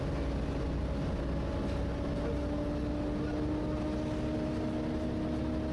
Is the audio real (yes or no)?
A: yes